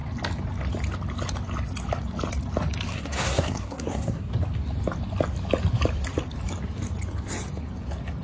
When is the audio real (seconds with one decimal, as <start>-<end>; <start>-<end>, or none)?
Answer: 0.0-2.9; 4.3-8.2